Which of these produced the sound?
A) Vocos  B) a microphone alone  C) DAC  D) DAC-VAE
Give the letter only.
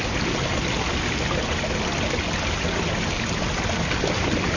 B